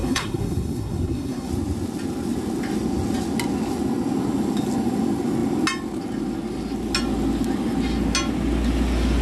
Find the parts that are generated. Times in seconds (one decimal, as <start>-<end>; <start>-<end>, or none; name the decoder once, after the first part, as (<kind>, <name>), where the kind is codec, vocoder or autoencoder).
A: 0.0-1.5 (codec, SNAC)